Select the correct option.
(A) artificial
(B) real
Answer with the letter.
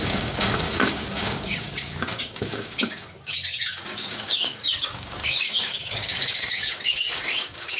A